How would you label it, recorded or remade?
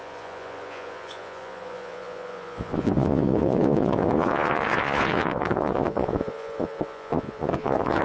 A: remade